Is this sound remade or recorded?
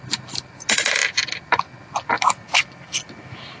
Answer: recorded